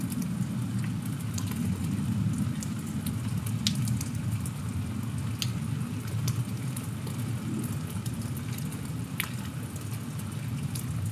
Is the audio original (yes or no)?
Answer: yes